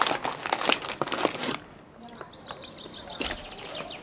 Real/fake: real